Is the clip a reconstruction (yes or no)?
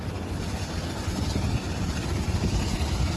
no